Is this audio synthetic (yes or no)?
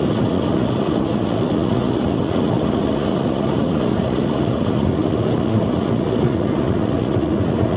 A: yes